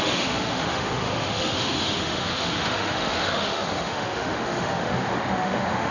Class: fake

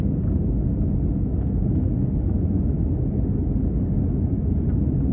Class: real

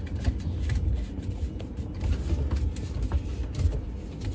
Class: real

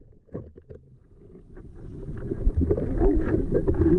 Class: real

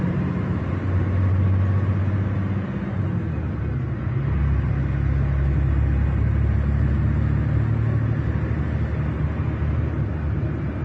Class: real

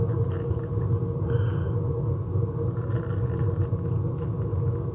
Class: real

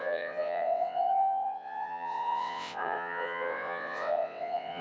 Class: fake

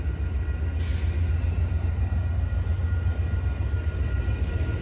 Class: real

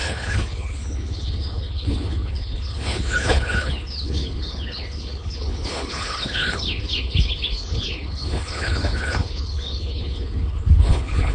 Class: fake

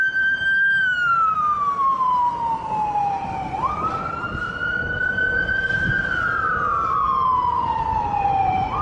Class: fake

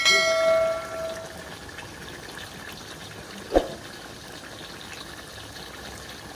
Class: real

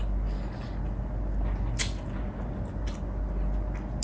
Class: real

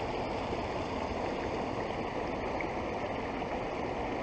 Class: real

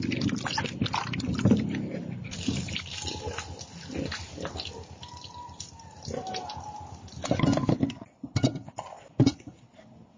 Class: real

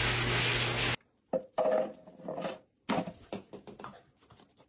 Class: real